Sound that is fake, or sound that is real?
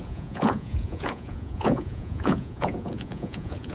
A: fake